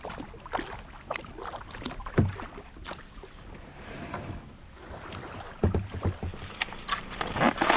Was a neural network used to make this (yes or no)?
no